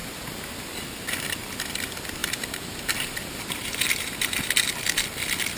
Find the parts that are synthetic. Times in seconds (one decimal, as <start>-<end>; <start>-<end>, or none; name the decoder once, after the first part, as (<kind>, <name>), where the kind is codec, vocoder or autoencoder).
2.2-4.4 (vocoder, BigVGAN v2)